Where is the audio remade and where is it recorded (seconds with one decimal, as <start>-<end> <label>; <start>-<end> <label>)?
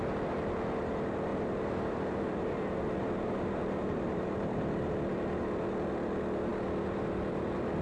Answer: 0.0-1.3 recorded; 1.3-4.9 remade; 4.9-7.8 recorded